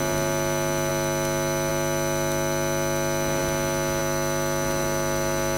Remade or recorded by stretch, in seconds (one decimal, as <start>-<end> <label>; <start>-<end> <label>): 0.0-5.6 recorded